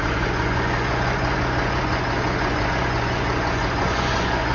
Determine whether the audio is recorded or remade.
remade